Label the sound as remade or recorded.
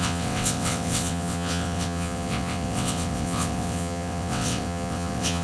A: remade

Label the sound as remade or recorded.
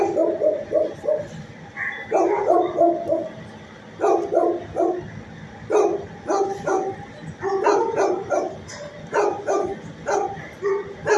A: recorded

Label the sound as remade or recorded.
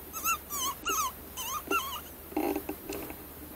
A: recorded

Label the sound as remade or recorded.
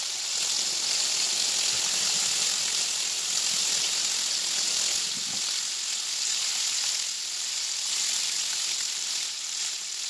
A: recorded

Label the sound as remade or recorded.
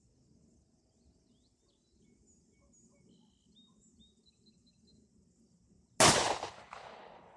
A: recorded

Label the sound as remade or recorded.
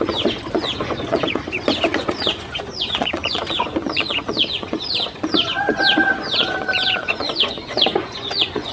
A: remade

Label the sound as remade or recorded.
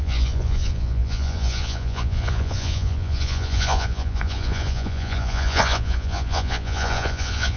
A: remade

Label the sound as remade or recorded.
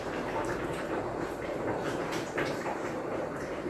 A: remade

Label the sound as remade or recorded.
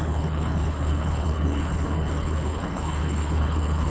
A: remade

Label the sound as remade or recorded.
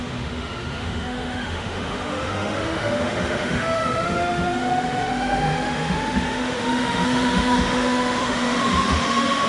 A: remade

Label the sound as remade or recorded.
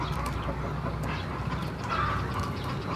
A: recorded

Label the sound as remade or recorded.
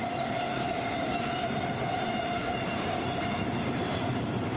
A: remade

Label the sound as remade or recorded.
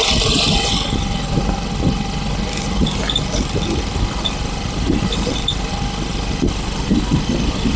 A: recorded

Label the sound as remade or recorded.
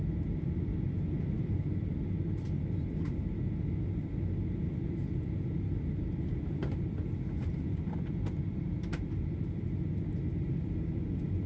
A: recorded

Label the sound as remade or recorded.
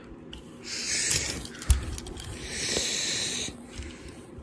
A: recorded